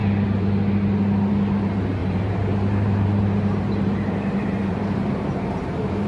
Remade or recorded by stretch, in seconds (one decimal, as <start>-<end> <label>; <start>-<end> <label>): 0.0-2.0 recorded; 2.0-6.1 remade